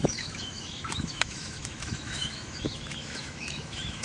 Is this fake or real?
fake